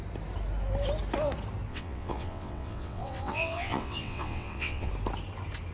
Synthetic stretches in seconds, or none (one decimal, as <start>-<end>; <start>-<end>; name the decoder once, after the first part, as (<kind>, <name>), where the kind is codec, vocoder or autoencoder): 1.7-4.9 (vocoder, WaveNeXt)